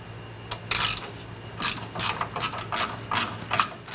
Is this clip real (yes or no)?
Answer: yes